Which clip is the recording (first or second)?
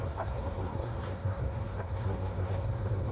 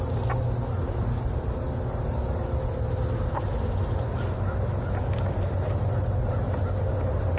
second